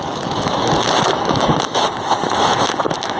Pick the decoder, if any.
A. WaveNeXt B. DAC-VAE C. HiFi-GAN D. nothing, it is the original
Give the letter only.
B